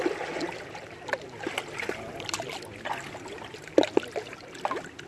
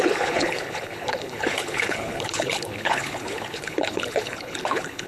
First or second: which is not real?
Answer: second